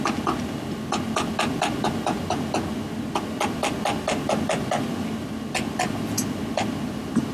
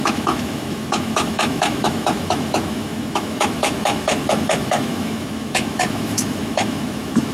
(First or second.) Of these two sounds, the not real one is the second